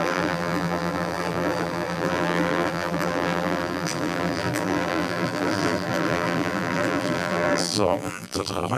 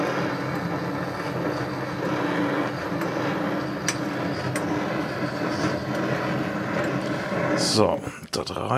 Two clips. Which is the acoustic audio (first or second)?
second